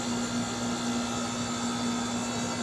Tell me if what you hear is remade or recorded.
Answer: recorded